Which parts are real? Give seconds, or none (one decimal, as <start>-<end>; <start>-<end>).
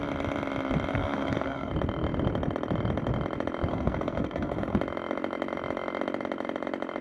0.0-0.9; 1.7-3.7; 4.8-7.0